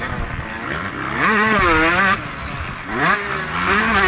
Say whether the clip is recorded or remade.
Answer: recorded